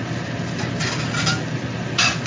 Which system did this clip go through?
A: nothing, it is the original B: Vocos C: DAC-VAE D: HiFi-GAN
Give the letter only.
A